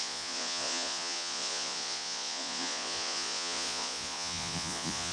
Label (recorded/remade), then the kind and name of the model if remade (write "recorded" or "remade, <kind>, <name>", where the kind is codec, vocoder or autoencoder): remade, vocoder, Vocos